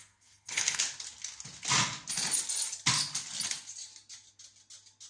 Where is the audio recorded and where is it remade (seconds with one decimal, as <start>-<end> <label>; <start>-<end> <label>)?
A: 0.0-0.8 remade; 0.8-5.1 recorded